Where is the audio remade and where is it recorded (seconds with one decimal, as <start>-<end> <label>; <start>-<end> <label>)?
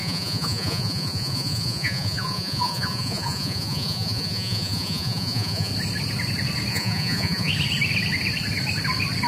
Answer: 0.0-5.7 remade; 5.7-6.7 recorded; 6.7-7.5 remade; 7.5-9.3 recorded